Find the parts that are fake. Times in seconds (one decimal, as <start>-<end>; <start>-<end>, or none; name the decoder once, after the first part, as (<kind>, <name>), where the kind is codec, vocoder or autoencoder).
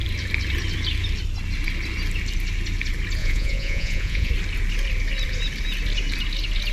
3.2-4.3 (vocoder, Vocos)